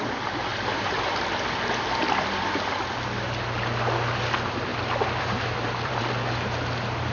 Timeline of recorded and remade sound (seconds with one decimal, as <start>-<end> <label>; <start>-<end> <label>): 0.0-0.5 recorded; 0.5-1.2 remade; 1.2-4.7 recorded; 4.7-6.0 remade; 6.0-7.1 recorded